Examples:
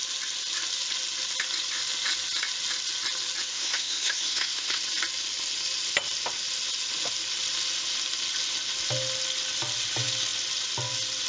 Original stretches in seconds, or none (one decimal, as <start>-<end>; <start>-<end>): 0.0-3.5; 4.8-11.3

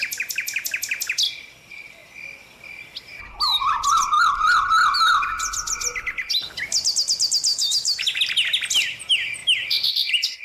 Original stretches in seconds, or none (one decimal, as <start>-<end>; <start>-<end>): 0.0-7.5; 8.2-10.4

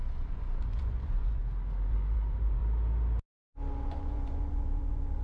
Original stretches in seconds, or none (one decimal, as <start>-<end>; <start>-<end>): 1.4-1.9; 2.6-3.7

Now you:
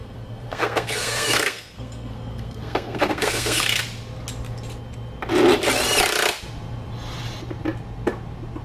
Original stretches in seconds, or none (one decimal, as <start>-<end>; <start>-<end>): 3.8-8.6

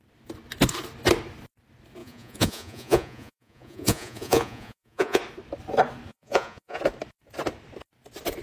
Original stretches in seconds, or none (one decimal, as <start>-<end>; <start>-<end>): 0.0-2.0; 5.2-6.1; 6.8-8.4